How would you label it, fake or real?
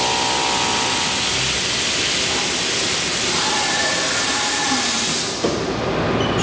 real